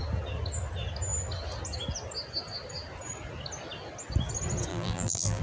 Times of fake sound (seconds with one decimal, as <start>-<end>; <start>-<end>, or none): 4.7-5.4